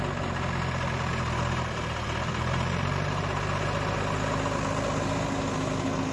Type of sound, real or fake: real